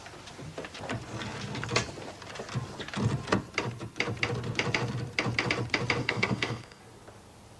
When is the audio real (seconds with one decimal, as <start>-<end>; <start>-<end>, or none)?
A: 0.0-6.0; 6.8-7.6